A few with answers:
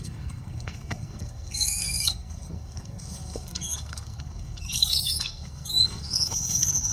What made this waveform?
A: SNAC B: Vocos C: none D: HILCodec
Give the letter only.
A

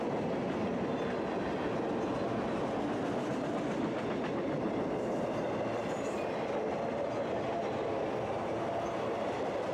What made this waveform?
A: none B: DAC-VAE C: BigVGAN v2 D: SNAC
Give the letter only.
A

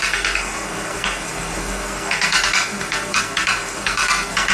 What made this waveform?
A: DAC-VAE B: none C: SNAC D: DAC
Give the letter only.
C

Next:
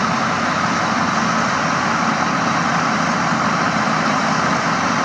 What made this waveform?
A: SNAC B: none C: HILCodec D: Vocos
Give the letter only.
B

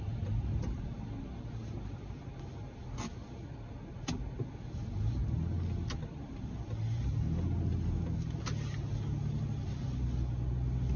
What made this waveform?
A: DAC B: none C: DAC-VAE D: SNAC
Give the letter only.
B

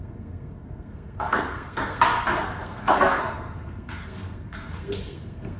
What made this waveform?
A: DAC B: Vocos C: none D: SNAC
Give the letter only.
D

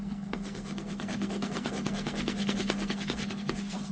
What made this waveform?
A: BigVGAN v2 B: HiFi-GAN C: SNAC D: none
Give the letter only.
C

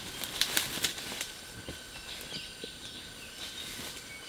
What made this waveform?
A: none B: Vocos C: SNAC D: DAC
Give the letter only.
A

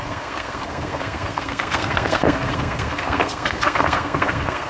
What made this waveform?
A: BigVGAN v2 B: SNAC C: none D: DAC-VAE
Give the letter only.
B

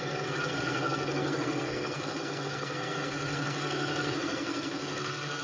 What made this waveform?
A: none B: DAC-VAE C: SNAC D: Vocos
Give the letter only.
C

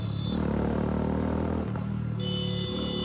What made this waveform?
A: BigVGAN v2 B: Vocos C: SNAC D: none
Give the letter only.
D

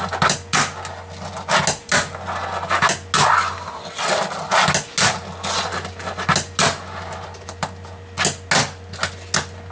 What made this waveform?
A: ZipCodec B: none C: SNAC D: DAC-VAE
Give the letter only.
B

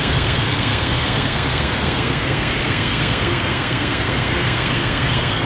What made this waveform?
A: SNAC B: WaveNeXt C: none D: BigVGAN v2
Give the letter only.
A